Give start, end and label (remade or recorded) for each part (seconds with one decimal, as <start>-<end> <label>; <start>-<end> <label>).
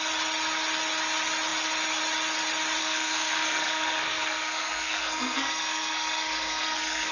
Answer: 0.0-2.8 recorded; 2.8-7.1 remade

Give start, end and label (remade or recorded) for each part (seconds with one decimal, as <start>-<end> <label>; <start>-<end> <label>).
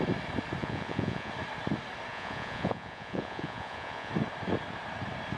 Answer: 0.0-0.6 recorded; 0.6-1.3 remade; 1.3-2.1 recorded; 2.1-4.1 remade; 4.1-5.4 recorded